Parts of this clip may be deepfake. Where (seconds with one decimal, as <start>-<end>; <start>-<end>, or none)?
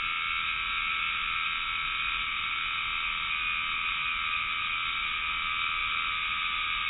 none